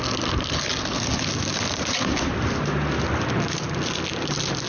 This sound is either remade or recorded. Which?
recorded